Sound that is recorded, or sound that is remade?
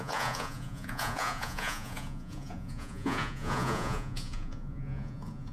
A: remade